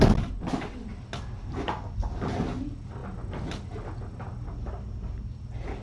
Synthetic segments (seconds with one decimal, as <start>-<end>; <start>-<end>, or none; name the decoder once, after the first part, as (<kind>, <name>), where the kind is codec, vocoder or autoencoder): none